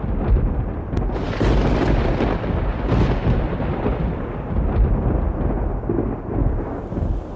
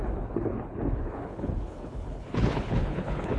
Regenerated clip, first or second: second